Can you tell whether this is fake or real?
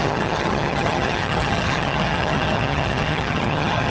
fake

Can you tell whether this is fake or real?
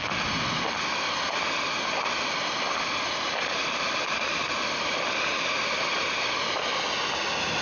real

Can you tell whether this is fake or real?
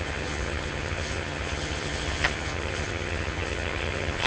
fake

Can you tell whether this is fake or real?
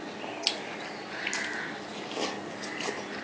real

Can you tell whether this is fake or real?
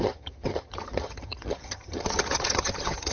fake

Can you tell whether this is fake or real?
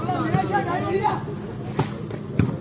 real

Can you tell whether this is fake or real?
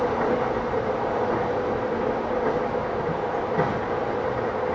real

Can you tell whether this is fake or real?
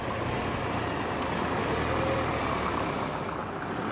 real